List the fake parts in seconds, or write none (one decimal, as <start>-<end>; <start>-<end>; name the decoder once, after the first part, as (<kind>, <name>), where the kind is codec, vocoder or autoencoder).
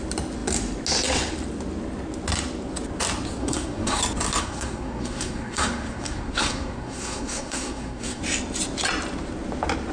3.4-4.0 (codec, SNAC); 4.4-8.2